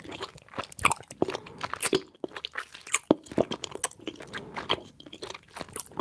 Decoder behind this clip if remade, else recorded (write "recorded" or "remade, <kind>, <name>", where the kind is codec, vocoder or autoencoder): recorded